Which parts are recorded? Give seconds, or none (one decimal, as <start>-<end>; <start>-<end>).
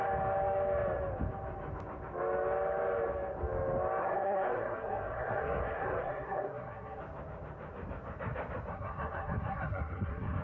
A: 0.0-4.0; 7.0-8.7